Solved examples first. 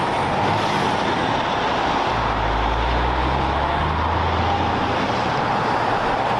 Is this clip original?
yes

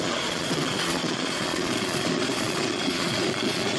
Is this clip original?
no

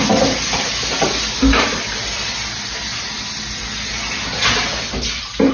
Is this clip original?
yes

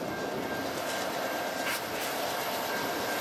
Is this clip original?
yes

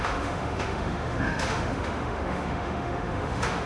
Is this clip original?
no